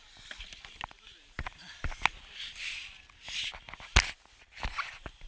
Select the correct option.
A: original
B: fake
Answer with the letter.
A